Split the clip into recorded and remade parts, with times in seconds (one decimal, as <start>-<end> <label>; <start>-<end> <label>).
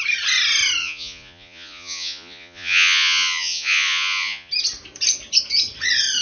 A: 0.0-0.8 recorded; 0.8-4.5 remade; 4.5-6.2 recorded